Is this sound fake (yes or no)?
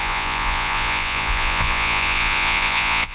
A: yes